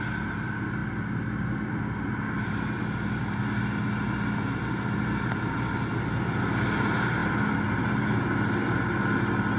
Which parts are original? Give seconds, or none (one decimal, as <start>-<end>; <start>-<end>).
0.0-9.6